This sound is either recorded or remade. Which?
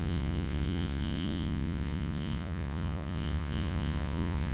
remade